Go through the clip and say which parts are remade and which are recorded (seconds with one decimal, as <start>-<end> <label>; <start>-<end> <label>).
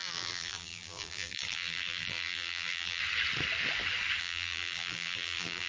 0.0-3.0 remade; 3.0-4.2 recorded; 4.2-5.7 remade